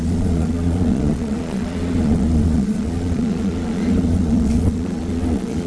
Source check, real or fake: fake